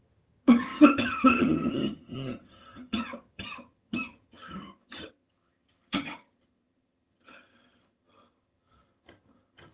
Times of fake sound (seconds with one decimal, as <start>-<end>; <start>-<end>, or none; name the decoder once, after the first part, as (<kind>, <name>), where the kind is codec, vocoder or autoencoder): 0.0-9.7 (vocoder, HiFi-GAN)